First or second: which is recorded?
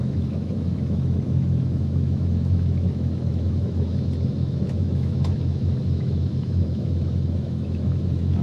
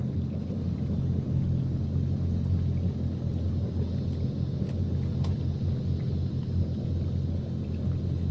second